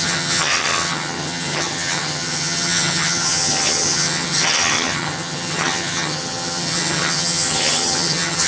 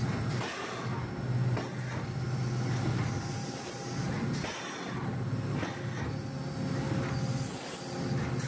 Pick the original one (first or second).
second